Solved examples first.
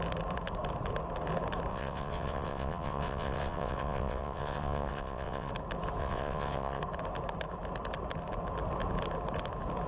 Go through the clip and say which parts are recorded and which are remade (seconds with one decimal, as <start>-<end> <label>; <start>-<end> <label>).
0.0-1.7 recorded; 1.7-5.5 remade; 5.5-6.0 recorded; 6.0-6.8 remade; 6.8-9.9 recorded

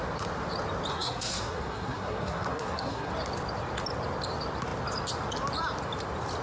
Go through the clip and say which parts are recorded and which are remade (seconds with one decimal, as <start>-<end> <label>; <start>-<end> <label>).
0.0-0.9 recorded; 0.9-3.1 remade; 3.1-6.4 recorded

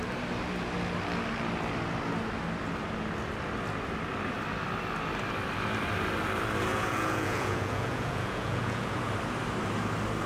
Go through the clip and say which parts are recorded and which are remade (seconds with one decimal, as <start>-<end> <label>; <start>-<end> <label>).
0.0-6.7 recorded; 6.7-9.1 remade; 9.1-10.3 recorded